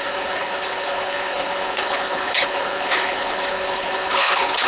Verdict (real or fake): fake